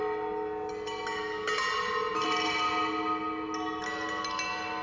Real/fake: real